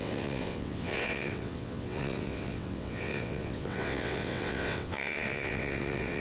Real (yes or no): no